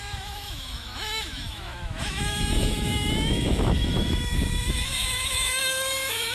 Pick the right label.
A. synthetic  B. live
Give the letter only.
A